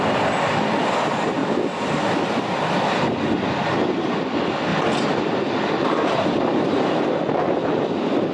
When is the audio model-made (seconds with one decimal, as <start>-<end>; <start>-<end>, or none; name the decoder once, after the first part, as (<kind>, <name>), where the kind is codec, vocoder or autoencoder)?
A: 0.0-8.3 (vocoder, BigVGAN v2)